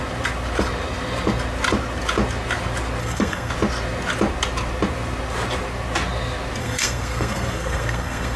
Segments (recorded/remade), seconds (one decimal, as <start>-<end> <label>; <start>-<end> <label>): 0.0-3.0 recorded; 3.0-3.5 remade; 3.5-6.6 recorded; 6.6-8.4 remade